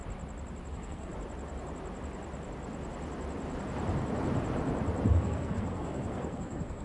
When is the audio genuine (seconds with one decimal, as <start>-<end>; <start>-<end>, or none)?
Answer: 0.0-0.7; 1.1-5.1